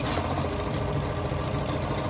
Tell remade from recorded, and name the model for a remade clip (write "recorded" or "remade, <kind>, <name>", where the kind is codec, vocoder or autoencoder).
recorded